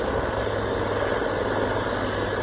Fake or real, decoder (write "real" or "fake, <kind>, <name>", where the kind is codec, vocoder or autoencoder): real